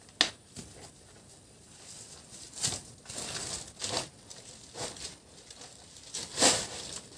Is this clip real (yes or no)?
yes